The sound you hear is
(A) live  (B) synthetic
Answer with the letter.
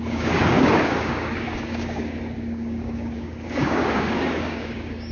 B